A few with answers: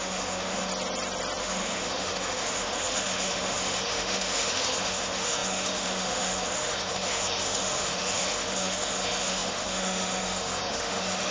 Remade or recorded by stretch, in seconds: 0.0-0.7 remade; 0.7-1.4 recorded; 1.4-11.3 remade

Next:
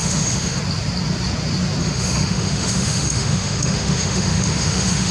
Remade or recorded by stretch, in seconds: 0.0-0.6 remade; 0.6-1.8 recorded; 1.8-5.1 remade

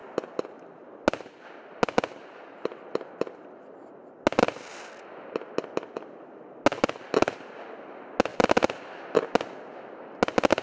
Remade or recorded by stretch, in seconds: 0.0-10.6 recorded

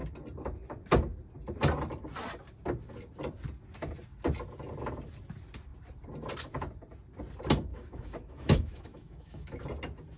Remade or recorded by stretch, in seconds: 0.0-7.7 recorded; 7.7-9.6 remade; 9.6-10.2 recorded

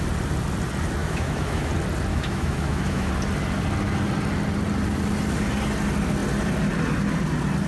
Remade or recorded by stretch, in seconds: 0.0-1.0 recorded; 1.0-1.7 remade; 1.7-2.1 recorded; 2.1-3.1 remade; 3.1-7.7 recorded

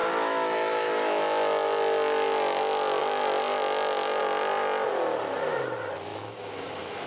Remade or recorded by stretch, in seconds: 0.0-1.2 remade; 1.2-6.1 recorded; 6.1-7.1 remade

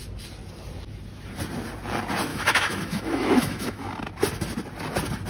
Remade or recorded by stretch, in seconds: 0.0-2.3 recorded; 2.3-3.9 remade; 3.9-5.3 recorded